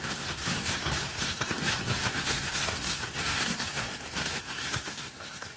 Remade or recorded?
remade